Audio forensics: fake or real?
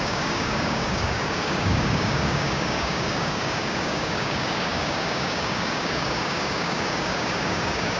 fake